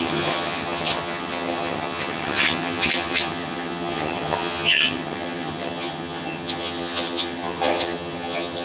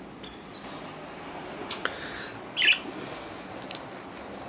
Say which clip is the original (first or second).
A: second